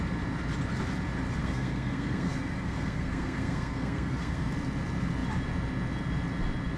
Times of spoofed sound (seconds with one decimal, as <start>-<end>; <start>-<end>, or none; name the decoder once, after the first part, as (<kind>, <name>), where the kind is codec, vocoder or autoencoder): 1.4-4.5 (codec, SNAC)